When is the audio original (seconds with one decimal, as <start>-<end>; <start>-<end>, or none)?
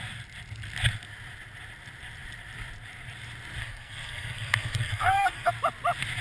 0.0-3.6; 5.5-6.2